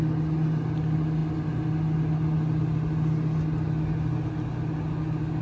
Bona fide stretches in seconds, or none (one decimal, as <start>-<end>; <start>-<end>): 0.0-5.4